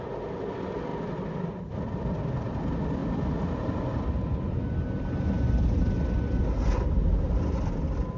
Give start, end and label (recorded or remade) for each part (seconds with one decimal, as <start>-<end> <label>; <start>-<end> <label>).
0.0-8.2 recorded